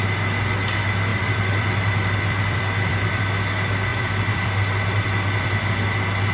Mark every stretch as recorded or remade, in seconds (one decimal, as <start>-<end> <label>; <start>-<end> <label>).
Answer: 0.0-1.1 recorded; 1.1-3.2 remade; 3.2-3.9 recorded; 3.9-5.7 remade; 5.7-6.3 recorded